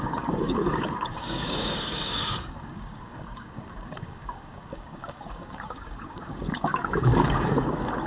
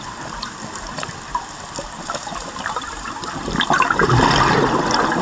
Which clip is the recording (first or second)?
second